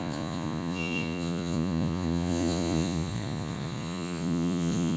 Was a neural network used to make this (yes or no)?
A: yes